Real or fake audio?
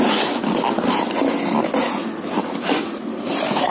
real